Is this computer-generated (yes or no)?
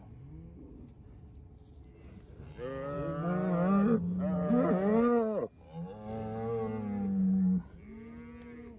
no